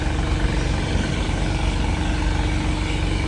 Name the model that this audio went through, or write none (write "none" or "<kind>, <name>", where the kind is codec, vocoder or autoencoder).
none